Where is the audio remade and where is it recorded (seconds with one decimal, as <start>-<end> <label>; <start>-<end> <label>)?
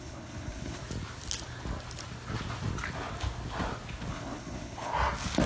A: 0.0-0.8 remade; 0.8-4.1 recorded; 4.1-4.9 remade; 4.9-5.5 recorded